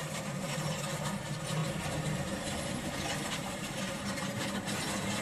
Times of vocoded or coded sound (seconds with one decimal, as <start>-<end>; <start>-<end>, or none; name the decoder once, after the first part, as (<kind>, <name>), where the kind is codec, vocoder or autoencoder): 0.0-0.6 (vocoder, BigVGAN v2); 1.6-4.3